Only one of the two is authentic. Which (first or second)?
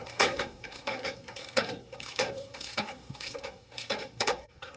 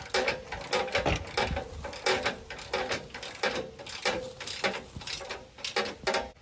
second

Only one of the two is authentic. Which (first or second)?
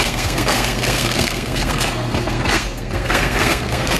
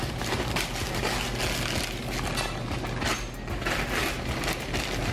second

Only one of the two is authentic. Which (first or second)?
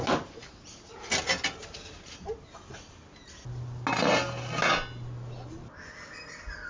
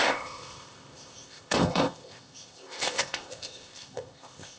first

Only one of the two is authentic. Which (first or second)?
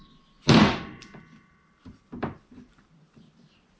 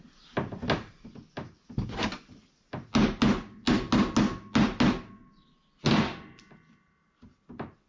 second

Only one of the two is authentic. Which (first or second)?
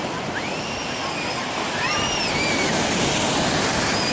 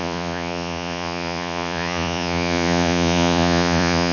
first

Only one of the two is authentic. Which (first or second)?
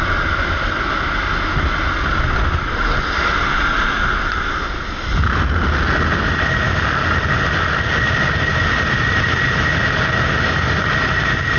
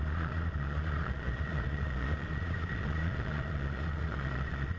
first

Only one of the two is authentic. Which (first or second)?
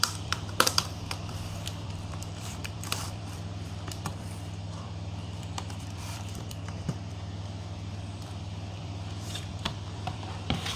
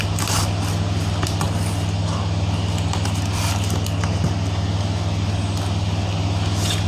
second